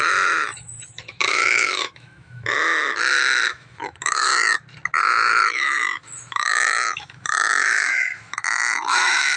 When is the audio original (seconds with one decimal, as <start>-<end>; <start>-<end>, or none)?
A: 4.3-5.3